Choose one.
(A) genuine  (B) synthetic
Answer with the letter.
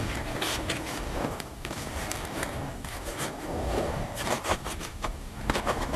B